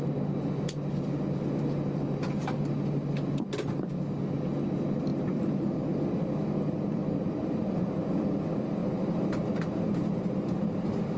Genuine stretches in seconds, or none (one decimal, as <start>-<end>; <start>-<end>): 0.0-5.1; 6.0-8.8; 10.0-11.2